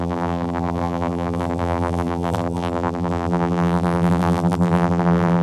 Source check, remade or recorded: remade